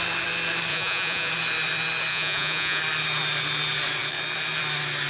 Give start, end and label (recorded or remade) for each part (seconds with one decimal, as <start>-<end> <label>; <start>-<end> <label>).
0.0-0.7 recorded; 0.7-1.3 remade; 1.3-2.1 recorded; 2.1-2.8 remade; 2.8-5.1 recorded